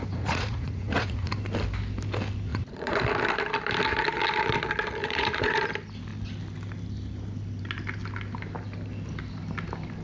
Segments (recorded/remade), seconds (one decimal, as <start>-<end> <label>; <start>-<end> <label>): 0.0-1.3 remade; 1.3-2.5 recorded; 2.5-3.0 remade; 3.0-5.0 recorded; 5.0-5.6 remade; 5.6-10.0 recorded